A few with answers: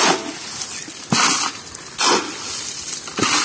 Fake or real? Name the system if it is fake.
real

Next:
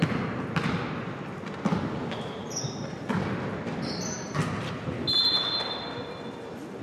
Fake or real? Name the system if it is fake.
real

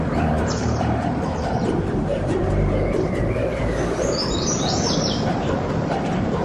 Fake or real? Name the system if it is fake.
fake, vocoder, BigVGAN v2